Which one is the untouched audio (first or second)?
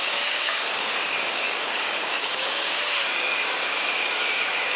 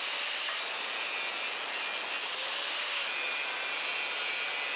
second